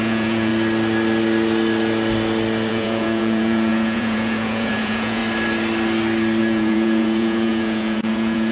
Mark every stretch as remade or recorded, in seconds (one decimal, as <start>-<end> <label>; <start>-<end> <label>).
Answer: 0.0-0.5 remade; 0.5-2.7 recorded; 2.7-5.2 remade; 5.2-6.4 recorded; 6.4-8.5 remade